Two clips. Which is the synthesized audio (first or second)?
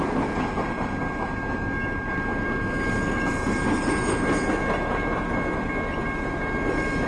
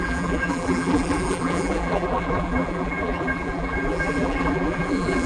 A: second